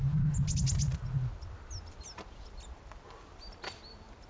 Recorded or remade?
recorded